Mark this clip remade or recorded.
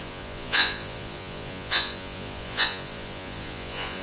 remade